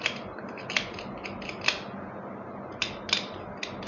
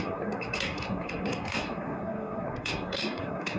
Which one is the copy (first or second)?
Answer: second